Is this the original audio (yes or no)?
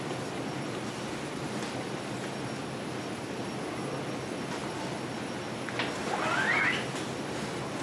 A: yes